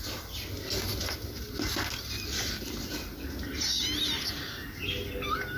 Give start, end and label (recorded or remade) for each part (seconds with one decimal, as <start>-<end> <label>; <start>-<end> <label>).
0.0-5.6 recorded